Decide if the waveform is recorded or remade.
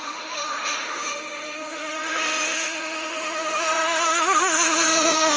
remade